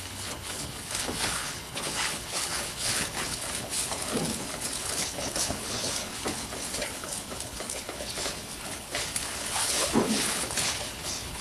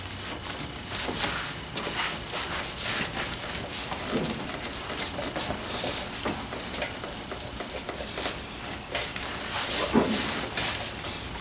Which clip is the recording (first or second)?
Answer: second